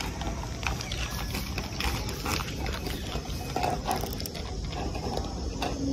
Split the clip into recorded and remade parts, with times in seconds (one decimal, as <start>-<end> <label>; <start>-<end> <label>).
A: 0.0-2.3 recorded; 2.3-4.4 remade; 4.4-5.9 recorded